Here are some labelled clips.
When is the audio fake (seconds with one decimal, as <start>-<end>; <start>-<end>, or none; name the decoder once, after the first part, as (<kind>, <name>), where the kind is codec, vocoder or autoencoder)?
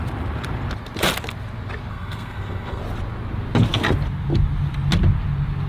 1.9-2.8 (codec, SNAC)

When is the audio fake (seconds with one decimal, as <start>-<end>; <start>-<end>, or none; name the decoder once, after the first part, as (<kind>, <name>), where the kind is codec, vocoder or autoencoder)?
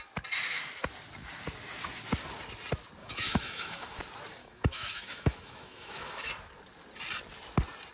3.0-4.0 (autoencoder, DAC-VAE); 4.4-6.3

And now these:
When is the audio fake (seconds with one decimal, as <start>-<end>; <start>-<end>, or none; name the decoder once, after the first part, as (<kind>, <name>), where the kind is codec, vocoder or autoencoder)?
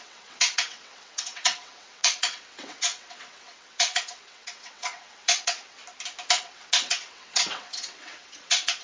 0.0-5.8 (vocoder, WaveNeXt); 6.4-8.8